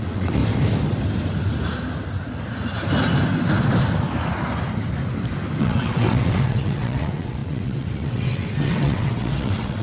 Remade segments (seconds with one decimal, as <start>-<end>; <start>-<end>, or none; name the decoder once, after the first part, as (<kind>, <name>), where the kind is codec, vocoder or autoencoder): 0.0-0.4 (vocoder, WaveNeXt); 5.6-9.8